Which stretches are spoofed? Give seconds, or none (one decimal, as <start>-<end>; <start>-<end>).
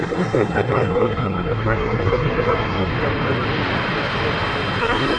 0.0-2.9; 4.8-5.2